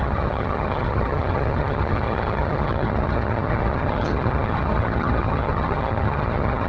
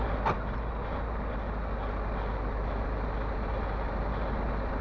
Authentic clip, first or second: second